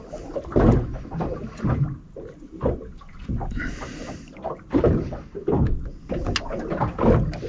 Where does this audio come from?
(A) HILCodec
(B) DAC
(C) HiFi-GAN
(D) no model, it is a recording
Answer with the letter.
D